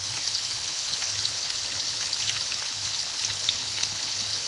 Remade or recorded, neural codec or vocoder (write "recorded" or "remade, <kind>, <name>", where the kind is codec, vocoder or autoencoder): remade, codec, HILCodec